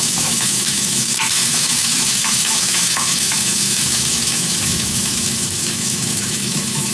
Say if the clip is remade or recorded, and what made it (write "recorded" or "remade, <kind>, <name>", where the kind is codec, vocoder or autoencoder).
remade, autoencoder, DAC-VAE